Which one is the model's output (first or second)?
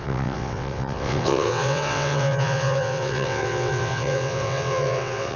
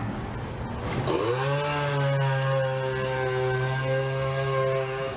first